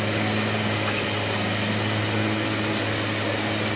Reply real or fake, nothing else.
real